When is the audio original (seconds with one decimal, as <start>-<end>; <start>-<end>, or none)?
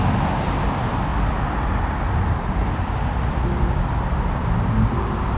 0.0-1.1; 4.3-5.4